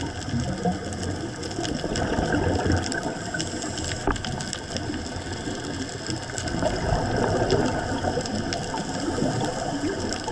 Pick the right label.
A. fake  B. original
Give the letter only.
B